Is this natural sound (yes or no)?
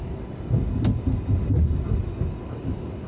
yes